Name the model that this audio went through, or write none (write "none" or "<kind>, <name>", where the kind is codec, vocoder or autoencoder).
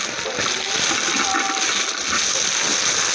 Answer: none